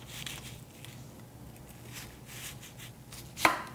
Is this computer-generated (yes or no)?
no